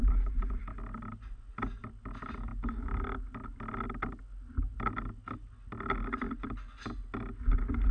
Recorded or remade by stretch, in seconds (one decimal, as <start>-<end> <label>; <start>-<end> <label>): 0.0-0.6 remade; 0.6-7.9 recorded